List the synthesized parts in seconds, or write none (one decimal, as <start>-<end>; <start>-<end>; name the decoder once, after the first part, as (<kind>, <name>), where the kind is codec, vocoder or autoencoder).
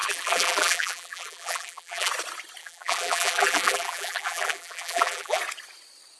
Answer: 0.0-2.1 (vocoder, BigVGAN v2); 2.6-5.4